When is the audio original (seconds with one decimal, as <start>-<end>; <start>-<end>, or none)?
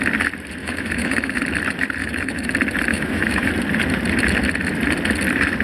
0.0-0.6; 1.4-2.0; 2.5-2.9; 3.5-5.6